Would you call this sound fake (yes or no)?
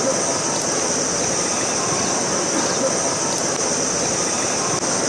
no